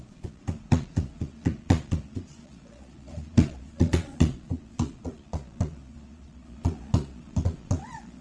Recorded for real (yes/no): no